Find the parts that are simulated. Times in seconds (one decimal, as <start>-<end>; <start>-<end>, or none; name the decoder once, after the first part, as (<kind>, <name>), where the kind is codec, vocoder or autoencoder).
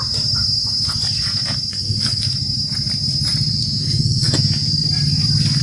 1.7-2.2 (codec, SNAC); 3.8-4.3